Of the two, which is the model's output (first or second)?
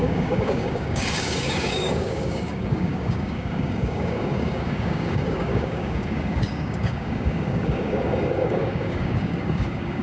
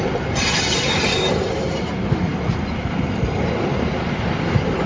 first